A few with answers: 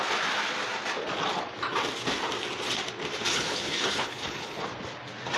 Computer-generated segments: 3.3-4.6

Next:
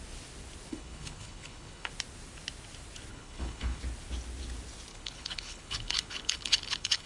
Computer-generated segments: 0.7-1.9; 3.1-3.8; 4.9-7.1

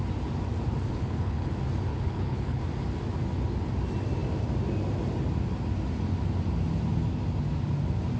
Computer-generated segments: 0.9-1.5; 1.9-2.6

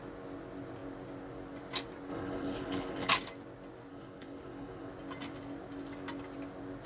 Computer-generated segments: 2.1-3.1; 3.9-4.9

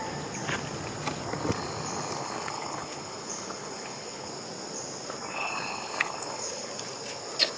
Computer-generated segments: 2.2-4.3; 5.3-6.7

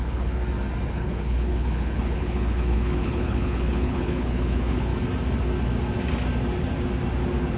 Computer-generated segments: 0.0-0.4; 0.9-4.9